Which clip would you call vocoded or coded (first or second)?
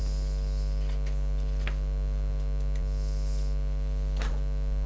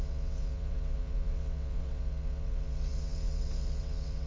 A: second